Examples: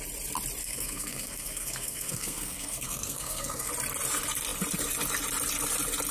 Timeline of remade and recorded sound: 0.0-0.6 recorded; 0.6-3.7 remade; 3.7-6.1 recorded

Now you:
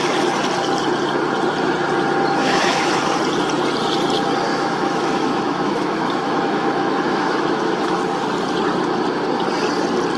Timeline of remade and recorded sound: 0.0-2.4 recorded; 2.4-3.0 remade; 3.0-4.5 recorded; 4.5-8.0 remade; 8.0-10.2 recorded

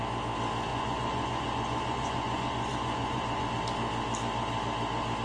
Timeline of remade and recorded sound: 0.0-0.7 recorded; 0.7-3.5 remade; 3.5-5.2 recorded